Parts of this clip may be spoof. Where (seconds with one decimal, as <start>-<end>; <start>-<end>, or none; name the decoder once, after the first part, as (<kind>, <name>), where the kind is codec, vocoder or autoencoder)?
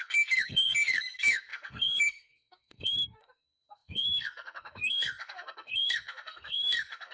0.0-7.1 (codec, SNAC)